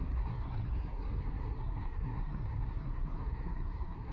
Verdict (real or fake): fake